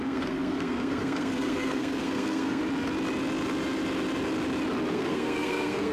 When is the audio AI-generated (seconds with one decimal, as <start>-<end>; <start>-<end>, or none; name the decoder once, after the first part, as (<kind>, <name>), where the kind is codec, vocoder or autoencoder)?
0.0-2.6 (codec, SNAC); 4.9-5.9